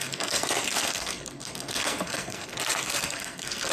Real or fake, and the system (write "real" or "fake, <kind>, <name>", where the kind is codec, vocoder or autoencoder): fake, codec, SNAC